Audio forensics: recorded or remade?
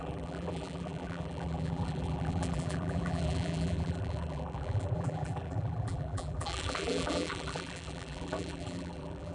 remade